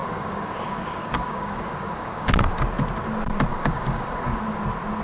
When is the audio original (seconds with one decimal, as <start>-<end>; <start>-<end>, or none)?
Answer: 2.6-3.5; 4.4-5.0